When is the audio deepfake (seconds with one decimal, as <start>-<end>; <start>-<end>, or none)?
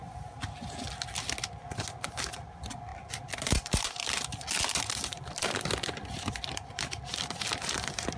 2.3-8.2